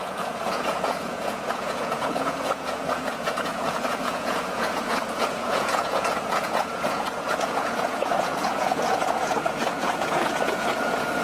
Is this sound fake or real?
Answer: fake